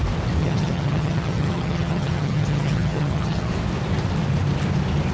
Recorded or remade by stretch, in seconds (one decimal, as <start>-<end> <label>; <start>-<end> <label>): 0.0-0.4 recorded; 0.4-3.5 remade; 3.5-5.1 recorded